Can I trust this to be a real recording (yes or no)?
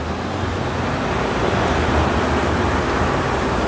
yes